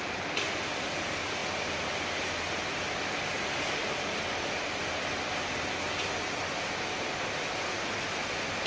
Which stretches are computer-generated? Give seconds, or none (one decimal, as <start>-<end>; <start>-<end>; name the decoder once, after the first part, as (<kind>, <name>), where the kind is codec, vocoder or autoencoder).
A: none